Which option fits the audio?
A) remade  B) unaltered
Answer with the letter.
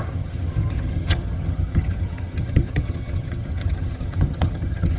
A